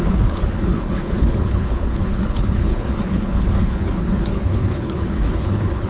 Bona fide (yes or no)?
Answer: no